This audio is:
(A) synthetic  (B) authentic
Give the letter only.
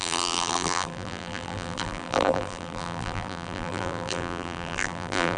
A